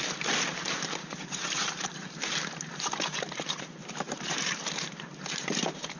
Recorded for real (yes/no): no